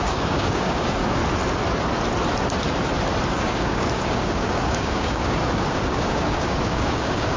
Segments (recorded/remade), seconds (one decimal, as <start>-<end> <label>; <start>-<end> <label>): 0.0-1.2 remade; 1.2-3.3 recorded; 3.3-7.4 remade